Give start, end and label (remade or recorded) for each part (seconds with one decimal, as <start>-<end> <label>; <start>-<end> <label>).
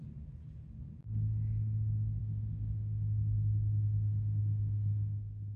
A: 0.0-2.2 recorded; 2.2-5.6 remade